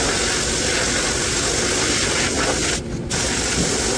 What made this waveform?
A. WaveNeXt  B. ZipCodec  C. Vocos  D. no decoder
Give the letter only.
D